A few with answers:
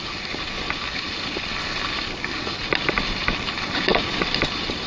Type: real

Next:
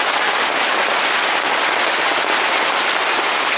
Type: real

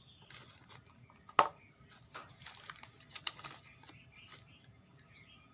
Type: real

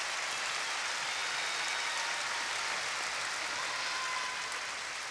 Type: real